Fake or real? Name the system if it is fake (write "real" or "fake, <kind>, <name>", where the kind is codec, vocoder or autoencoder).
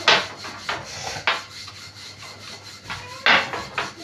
real